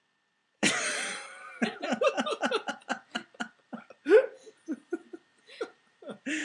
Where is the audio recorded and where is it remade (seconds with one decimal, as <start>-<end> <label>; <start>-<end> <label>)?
0.0-0.4 recorded; 0.4-2.7 remade; 2.7-5.3 recorded; 5.3-6.4 remade